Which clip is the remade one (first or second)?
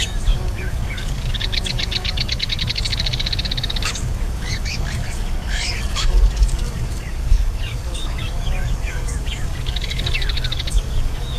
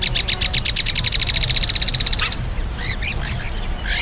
first